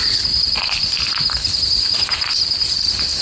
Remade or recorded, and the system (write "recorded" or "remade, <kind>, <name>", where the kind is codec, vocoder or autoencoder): remade, vocoder, BigVGAN v2